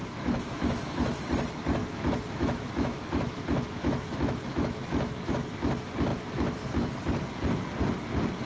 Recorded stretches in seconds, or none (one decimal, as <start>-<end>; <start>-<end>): 1.2-1.8; 5.3-6.1; 6.9-8.5